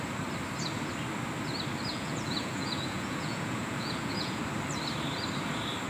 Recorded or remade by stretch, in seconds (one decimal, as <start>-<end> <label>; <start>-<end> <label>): 0.0-1.9 recorded; 1.9-4.4 remade; 4.4-5.9 recorded